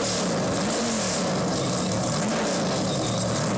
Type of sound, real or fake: real